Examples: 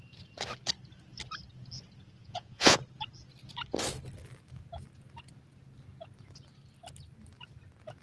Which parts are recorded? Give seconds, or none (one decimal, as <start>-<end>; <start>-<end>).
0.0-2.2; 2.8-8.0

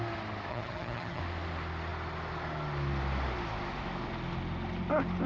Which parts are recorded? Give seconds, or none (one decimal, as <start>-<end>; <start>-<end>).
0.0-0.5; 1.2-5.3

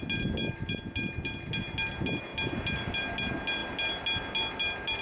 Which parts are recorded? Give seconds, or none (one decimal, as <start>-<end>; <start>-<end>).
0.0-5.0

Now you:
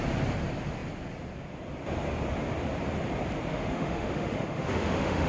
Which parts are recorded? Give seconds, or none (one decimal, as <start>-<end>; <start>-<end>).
0.0-3.5